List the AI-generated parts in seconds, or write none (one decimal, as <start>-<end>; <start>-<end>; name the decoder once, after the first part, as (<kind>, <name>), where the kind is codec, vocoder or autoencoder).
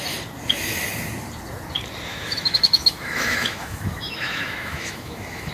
2.1-5.5 (autoencoder, DAC-VAE)